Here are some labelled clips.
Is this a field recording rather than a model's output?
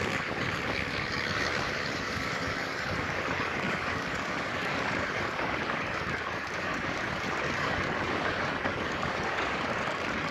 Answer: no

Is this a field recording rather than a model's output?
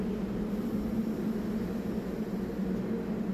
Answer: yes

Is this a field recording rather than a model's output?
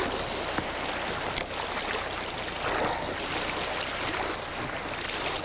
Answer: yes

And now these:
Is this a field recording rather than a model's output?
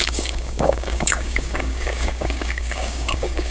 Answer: no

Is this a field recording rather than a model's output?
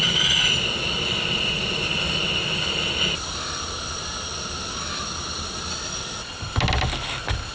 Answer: yes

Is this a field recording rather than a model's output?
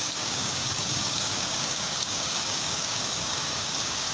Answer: no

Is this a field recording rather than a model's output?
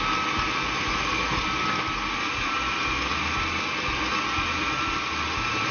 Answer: yes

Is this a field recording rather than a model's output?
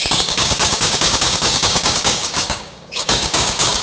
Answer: no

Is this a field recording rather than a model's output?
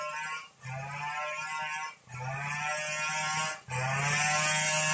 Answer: yes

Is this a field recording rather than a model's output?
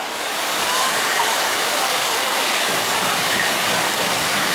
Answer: no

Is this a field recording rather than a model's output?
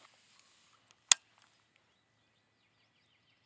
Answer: yes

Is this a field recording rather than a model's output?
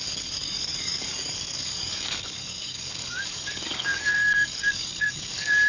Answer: no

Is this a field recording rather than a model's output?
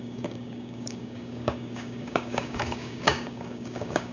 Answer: no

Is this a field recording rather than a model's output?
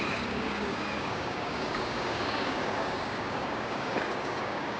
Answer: no